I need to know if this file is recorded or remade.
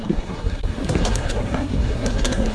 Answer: remade